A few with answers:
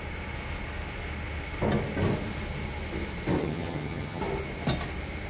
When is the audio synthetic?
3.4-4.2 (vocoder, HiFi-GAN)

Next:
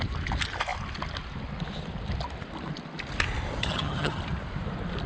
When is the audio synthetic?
3.6-4.2 (vocoder, HiFi-GAN)

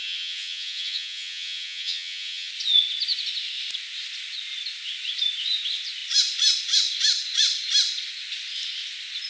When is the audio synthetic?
0.0-2.5 (vocoder, HiFi-GAN)

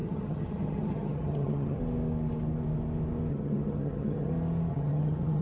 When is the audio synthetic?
0.0-1.8 (vocoder, HiFi-GAN); 3.3-4.3; 4.7-5.4

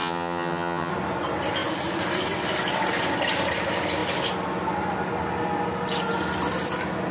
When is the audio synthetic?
0.0-0.9 (vocoder, HiFi-GAN)